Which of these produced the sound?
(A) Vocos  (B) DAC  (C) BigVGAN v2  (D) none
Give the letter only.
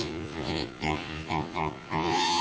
A